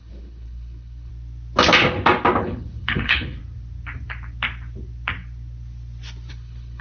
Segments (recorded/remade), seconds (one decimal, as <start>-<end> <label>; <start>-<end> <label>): 0.0-1.1 remade; 1.1-2.4 recorded; 2.4-3.4 remade; 3.4-6.3 recorded; 6.3-6.8 remade